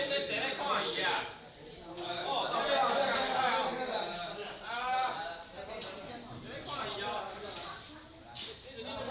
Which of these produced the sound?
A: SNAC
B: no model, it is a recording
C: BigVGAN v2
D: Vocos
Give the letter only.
B